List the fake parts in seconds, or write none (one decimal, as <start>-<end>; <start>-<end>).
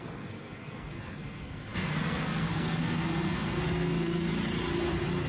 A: 0.0-4.3